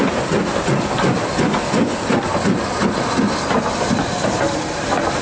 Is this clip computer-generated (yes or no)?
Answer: no